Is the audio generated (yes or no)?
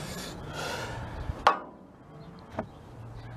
no